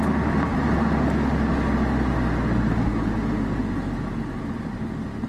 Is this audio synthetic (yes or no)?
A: no